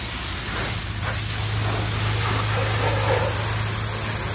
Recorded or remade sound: recorded